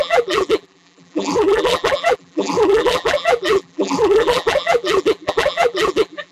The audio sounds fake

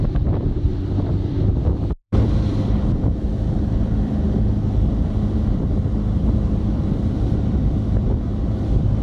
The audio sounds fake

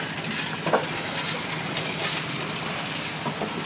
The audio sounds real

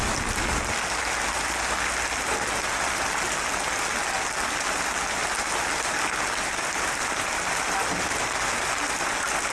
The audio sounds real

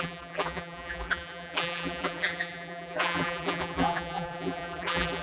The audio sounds fake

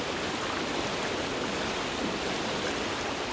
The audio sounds real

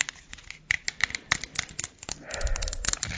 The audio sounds real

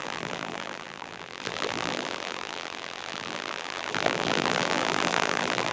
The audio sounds fake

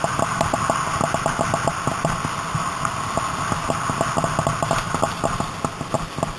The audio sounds real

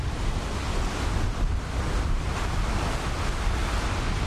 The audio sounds real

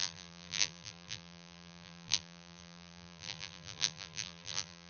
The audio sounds fake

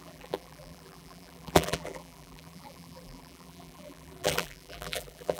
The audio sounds fake